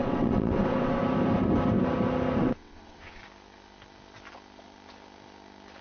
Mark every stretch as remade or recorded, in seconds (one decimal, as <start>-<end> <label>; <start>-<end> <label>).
0.0-1.0 remade; 1.0-2.4 recorded; 2.4-3.2 remade; 3.2-5.8 recorded